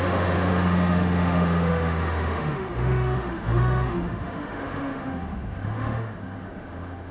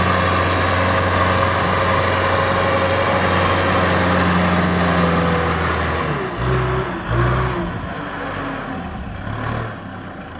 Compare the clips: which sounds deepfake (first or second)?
first